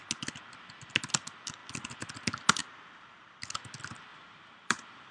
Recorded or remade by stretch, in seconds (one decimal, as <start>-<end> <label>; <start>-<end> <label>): 0.0-2.6 recorded; 2.6-3.4 remade; 3.4-4.1 recorded; 4.1-5.1 remade